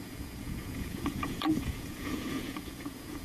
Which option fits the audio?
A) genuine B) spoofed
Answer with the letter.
B